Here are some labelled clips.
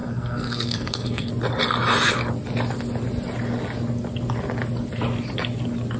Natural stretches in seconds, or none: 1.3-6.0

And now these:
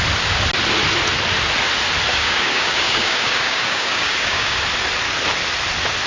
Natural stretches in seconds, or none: 0.0-2.1; 4.6-6.1

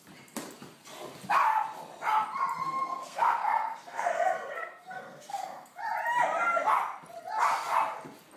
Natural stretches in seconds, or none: 0.0-2.6; 5.8-8.4

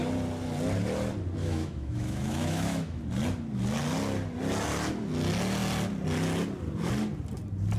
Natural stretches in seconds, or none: 0.0-1.4; 3.0-7.8

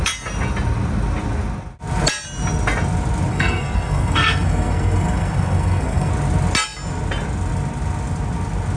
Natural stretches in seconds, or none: 0.0-3.3; 6.1-8.8

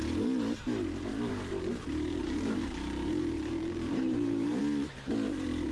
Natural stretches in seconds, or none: 0.0-2.1; 4.6-5.7

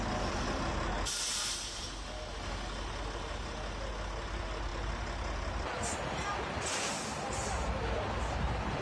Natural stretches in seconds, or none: 0.0-8.8